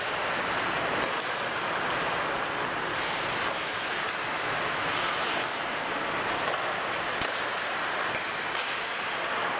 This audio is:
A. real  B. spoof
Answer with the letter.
A